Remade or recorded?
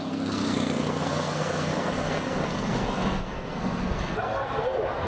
remade